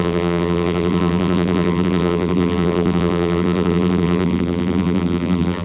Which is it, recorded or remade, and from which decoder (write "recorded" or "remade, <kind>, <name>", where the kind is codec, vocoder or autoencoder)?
remade, vocoder, BigVGAN v2